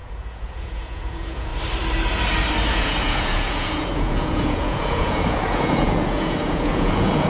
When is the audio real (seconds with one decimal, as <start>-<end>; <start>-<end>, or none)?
1.5-2.7